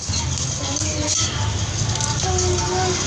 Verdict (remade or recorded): recorded